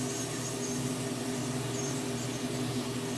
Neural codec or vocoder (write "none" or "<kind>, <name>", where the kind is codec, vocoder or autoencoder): none